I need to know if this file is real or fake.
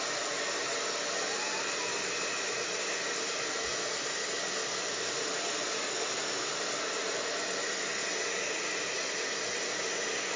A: real